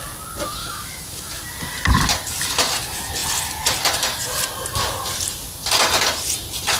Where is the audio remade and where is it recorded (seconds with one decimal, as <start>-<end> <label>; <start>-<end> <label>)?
0.0-0.6 recorded; 0.6-1.4 remade; 1.4-6.8 recorded